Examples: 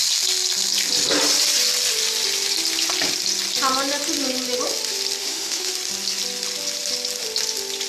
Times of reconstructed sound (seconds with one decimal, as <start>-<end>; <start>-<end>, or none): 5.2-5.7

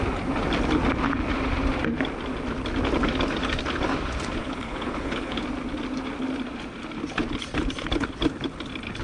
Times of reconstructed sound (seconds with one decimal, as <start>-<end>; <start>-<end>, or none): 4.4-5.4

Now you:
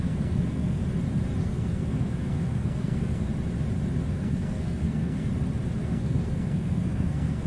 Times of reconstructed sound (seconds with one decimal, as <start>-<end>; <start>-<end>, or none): 0.0-0.8; 1.4-3.3; 4.1-5.3; 5.8-7.5

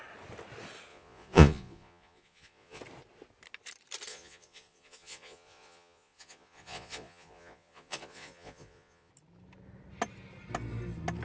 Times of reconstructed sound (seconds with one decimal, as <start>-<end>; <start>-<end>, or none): 0.9-2.8; 4.1-9.1